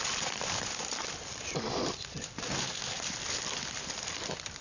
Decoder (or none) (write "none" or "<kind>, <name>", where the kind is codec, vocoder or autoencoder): vocoder, BigVGAN v2